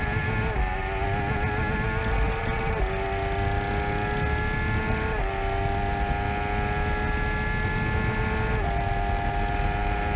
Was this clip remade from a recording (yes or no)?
no